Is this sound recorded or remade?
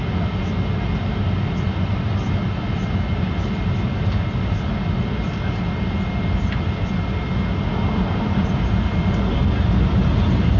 recorded